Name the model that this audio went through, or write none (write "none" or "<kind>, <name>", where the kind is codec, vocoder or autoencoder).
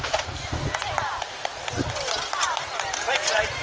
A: none